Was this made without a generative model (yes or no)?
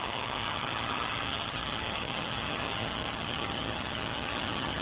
no